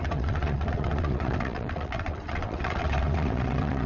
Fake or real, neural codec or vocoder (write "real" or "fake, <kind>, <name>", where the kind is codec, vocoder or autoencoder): fake, vocoder, WaveNeXt